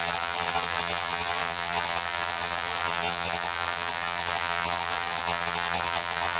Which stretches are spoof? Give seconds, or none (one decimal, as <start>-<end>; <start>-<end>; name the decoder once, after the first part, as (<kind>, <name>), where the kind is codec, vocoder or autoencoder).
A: 0.0-6.4 (vocoder, BigVGAN v2)